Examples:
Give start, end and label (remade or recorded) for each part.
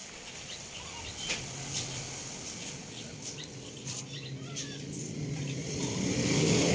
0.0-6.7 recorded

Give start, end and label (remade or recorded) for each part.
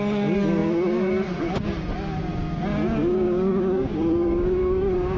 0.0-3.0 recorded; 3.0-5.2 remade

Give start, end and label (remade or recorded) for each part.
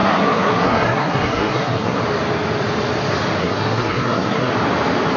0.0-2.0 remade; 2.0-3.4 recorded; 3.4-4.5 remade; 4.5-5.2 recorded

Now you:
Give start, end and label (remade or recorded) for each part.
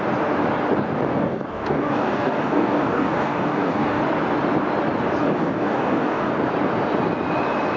0.0-1.1 recorded; 1.1-4.0 remade; 4.0-5.2 recorded; 5.2-6.3 remade; 6.3-7.8 recorded